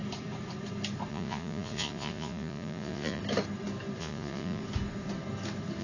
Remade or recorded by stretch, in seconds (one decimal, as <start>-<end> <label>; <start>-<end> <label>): 0.0-1.1 recorded; 1.1-3.2 remade; 3.2-4.0 recorded; 4.0-4.6 remade; 4.6-5.8 recorded